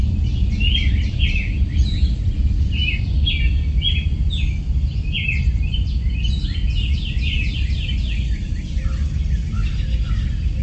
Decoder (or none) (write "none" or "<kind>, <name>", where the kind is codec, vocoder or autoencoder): none